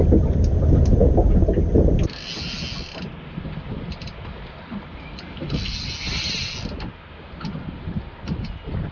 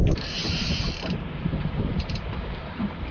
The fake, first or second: second